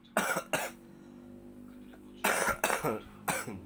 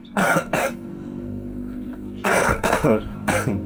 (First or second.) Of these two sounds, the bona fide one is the first